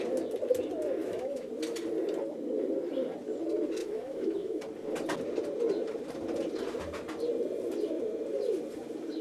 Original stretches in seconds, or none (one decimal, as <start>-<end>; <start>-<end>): 0.0-1.0; 1.5-3.8; 4.6-9.2